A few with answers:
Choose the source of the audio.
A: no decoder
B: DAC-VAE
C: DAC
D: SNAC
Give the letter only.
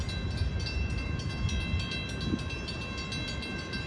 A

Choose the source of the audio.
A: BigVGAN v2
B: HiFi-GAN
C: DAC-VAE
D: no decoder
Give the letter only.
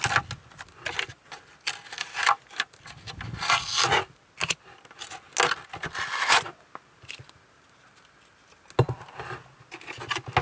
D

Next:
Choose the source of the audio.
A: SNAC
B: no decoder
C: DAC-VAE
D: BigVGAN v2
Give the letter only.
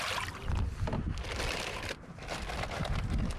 B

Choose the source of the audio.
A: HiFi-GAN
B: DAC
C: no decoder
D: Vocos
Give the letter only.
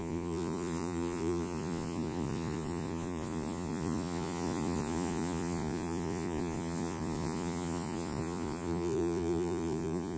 D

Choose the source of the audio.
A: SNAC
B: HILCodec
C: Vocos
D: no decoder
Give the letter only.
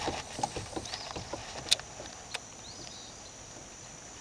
D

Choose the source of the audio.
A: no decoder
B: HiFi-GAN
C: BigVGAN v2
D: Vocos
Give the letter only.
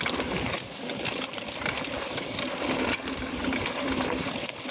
A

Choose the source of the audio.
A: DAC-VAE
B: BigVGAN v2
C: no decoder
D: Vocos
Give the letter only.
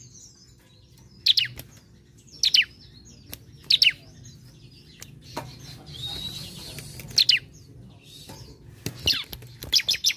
C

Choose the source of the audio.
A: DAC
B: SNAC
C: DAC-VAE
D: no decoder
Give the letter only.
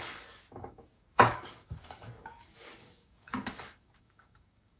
A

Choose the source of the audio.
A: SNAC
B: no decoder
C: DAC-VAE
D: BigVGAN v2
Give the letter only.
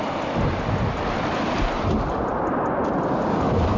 B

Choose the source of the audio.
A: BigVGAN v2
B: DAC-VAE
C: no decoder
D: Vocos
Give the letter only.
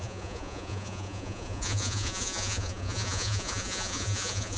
D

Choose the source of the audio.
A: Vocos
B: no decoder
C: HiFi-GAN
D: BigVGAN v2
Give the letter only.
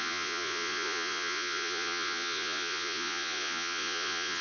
A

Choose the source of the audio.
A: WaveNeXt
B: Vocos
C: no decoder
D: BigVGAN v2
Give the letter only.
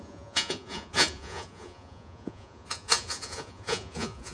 B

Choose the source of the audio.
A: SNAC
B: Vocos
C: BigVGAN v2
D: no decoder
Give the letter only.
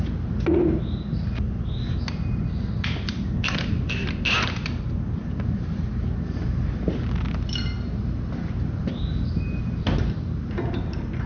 D